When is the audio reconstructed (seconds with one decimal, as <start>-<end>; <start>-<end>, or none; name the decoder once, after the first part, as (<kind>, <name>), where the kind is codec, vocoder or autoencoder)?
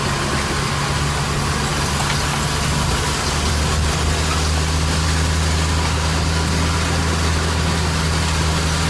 none